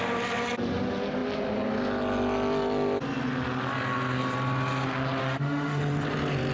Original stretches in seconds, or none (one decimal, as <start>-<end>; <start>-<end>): 0.0-5.2; 5.8-6.5